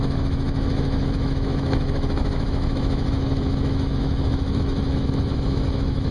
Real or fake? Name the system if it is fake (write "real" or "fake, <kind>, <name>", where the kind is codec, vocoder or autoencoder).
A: fake, autoencoder, DAC-VAE